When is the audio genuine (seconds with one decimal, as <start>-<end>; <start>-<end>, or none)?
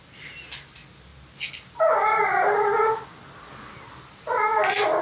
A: 0.0-5.0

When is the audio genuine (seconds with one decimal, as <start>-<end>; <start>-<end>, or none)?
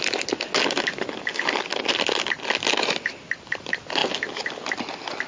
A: 0.0-5.3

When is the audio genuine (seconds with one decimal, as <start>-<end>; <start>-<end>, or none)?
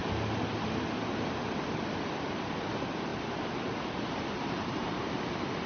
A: 0.0-3.1; 5.2-5.7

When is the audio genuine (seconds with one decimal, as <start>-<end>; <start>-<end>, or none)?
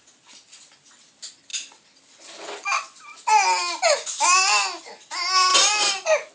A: 0.0-5.5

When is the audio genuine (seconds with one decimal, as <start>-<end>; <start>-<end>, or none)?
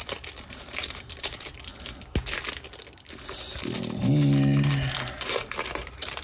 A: 0.0-0.6; 1.7-5.3